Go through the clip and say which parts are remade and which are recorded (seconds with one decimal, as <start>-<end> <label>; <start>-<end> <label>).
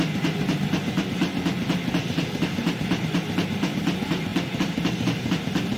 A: 0.0-5.8 recorded